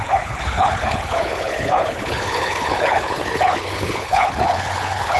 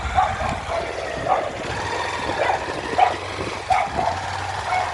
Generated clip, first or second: first